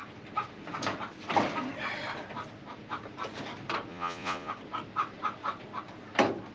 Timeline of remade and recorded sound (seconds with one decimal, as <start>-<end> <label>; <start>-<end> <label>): 0.0-3.9 recorded; 3.9-4.5 remade; 4.5-6.5 recorded